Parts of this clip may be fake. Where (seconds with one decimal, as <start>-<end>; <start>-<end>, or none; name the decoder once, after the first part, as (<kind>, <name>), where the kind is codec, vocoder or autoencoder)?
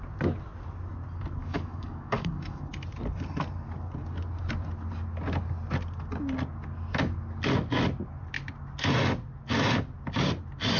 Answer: 1.4-2.7 (codec, DAC)